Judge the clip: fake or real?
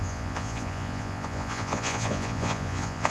fake